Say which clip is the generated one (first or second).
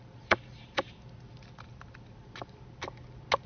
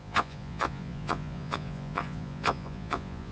second